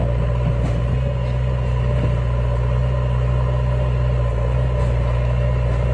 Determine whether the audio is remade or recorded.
recorded